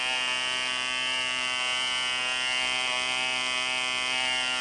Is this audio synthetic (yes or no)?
no